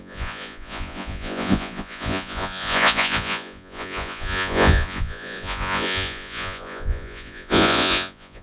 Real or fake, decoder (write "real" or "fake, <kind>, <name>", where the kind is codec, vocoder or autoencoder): fake, vocoder, Vocos